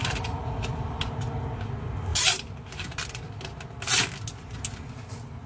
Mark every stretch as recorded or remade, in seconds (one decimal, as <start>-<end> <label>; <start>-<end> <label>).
0.0-1.4 remade; 1.4-2.1 recorded; 2.1-3.3 remade; 3.3-5.5 recorded